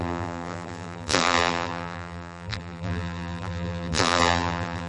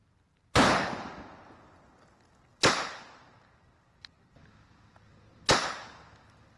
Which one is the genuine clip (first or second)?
second